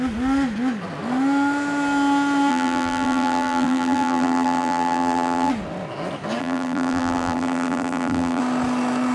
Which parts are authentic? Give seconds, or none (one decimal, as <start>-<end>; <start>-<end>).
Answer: 0.0-2.5; 5.5-6.4; 8.4-9.1